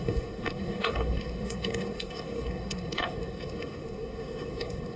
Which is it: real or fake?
fake